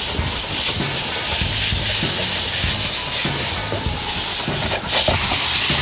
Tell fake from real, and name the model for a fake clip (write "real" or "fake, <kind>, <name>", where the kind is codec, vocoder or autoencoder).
real